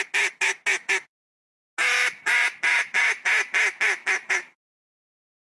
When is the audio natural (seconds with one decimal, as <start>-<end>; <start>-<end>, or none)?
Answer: 0.0-5.6